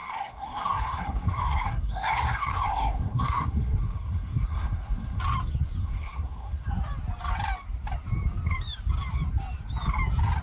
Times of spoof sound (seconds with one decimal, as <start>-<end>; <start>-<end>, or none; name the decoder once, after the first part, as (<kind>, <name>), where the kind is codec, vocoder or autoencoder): 0.0-5.2 (codec, SNAC); 5.8-6.7